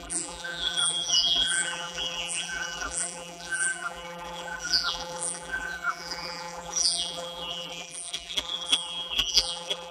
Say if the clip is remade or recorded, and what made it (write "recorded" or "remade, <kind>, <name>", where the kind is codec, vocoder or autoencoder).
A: remade, vocoder, BigVGAN v2